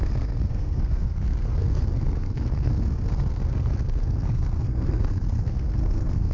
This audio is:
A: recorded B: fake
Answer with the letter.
B